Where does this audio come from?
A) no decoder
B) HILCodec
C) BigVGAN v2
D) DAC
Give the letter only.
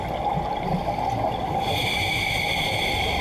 A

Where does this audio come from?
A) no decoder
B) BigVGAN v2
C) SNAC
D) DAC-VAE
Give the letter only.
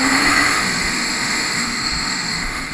D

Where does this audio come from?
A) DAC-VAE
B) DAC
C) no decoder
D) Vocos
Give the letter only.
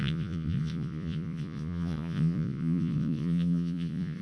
D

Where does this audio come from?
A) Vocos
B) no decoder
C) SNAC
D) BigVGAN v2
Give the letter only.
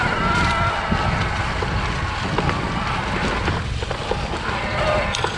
B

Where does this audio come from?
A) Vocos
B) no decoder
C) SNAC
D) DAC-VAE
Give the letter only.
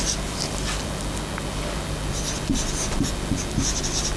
B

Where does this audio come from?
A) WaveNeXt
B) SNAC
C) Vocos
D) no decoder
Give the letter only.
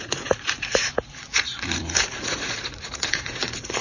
C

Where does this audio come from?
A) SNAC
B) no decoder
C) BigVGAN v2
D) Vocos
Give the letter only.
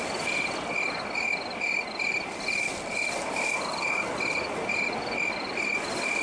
B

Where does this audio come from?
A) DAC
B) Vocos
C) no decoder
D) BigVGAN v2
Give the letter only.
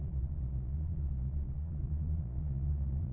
B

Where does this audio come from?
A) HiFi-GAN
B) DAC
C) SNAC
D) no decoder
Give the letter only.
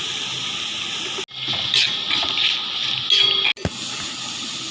D